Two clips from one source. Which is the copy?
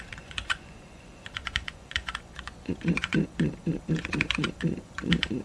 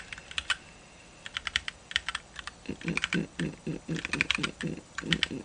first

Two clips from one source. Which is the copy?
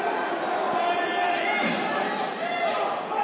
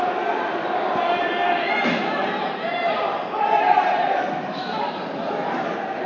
second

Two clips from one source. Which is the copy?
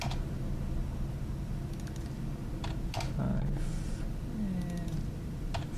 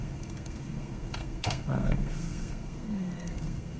second